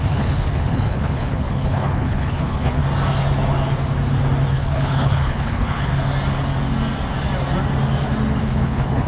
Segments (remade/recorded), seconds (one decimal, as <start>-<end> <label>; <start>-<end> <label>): 0.0-2.8 remade; 2.8-4.5 recorded; 4.5-5.9 remade; 5.9-8.4 recorded; 8.4-9.1 remade